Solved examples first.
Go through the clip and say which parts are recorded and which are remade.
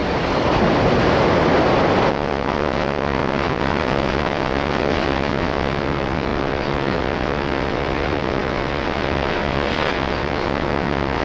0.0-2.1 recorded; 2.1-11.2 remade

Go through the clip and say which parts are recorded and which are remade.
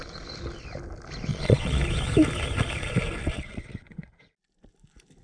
0.0-1.3 recorded; 1.3-1.8 remade; 1.8-3.2 recorded; 3.2-4.3 remade; 4.3-5.2 recorded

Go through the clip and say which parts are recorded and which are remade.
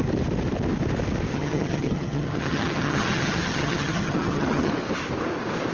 0.0-1.3 recorded; 1.3-4.7 remade; 4.7-5.7 recorded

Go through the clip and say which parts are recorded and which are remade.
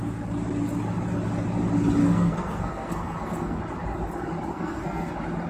0.0-2.0 recorded; 2.0-3.6 remade; 3.6-4.5 recorded; 4.5-5.1 remade; 5.1-5.5 recorded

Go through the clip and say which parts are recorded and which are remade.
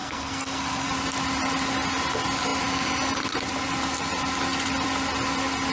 0.0-0.9 remade; 0.9-5.7 recorded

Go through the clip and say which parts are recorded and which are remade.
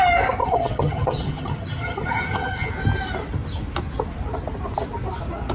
0.0-0.4 recorded; 0.4-2.7 remade; 2.7-5.5 recorded